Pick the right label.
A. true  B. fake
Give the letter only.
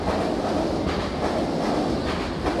A